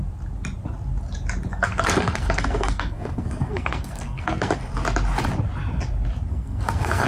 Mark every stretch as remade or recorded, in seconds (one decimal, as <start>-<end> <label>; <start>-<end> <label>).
0.0-1.5 recorded; 1.5-4.6 remade; 4.6-6.3 recorded; 6.3-7.1 remade